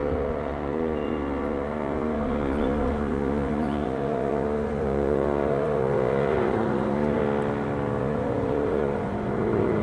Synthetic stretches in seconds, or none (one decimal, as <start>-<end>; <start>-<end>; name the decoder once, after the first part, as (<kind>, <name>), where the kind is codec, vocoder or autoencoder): 0.0-7.2 (vocoder, Vocos); 8.0-9.8